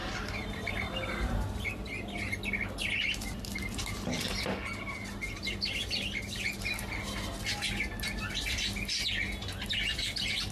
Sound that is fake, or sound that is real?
real